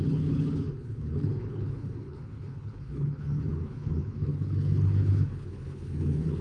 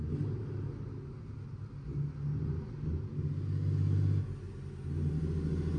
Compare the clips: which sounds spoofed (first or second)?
first